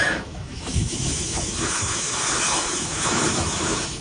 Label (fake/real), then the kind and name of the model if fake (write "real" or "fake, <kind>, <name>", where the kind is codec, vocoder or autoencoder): fake, autoencoder, DAC-VAE